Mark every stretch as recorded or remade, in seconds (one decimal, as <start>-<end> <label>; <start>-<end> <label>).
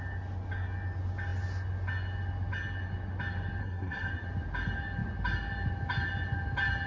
0.0-3.6 recorded; 3.6-4.1 remade; 4.1-6.9 recorded